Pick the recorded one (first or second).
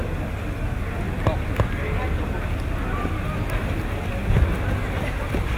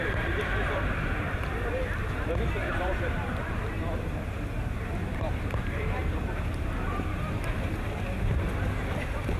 first